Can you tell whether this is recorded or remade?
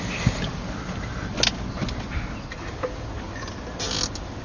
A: recorded